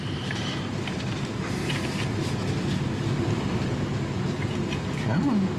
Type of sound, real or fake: real